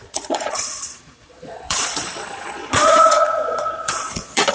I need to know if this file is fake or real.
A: fake